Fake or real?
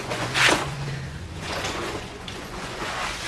fake